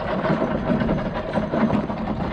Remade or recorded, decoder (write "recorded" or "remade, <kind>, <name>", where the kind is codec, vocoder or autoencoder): recorded